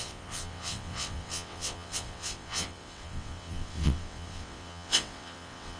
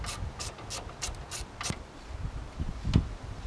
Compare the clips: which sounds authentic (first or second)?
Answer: second